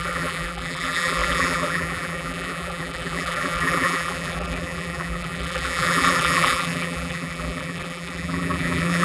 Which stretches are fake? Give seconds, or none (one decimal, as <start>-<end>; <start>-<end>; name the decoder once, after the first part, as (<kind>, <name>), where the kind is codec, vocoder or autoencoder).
0.0-9.0 (vocoder, BigVGAN v2)